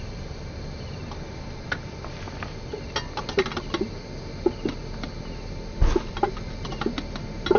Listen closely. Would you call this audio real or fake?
real